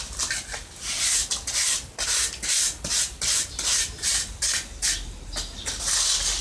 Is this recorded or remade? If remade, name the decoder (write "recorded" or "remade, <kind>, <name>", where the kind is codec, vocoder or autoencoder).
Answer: recorded